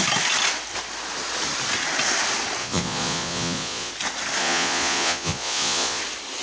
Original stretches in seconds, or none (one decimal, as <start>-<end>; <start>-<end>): 0.0-2.6; 3.9-4.4; 6.0-6.4